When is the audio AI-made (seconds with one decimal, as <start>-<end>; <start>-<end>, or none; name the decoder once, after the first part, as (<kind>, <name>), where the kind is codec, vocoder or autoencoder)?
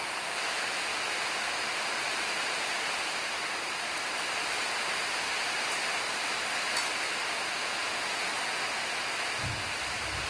7.6-8.3 (vocoder, Vocos)